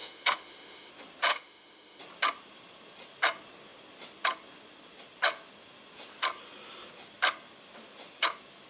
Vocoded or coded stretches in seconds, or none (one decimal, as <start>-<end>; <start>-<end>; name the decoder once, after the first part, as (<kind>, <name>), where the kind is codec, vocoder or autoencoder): 0.0-0.9 (autoencoder, DAC-VAE); 1.3-2.0